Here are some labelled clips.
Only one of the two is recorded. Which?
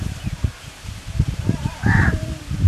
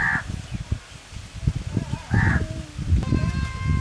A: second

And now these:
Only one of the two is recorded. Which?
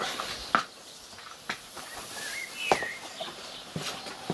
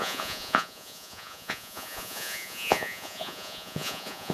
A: first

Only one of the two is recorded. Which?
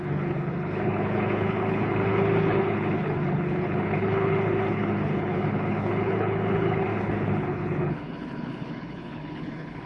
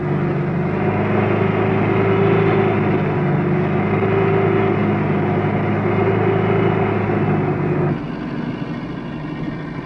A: second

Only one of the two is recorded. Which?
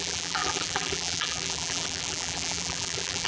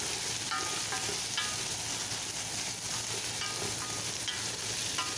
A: second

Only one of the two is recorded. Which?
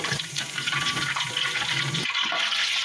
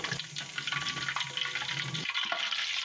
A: second